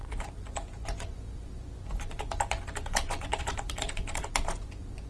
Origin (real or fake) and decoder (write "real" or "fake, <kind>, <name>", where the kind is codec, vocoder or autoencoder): fake, vocoder, Vocos